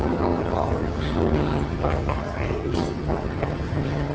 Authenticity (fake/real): fake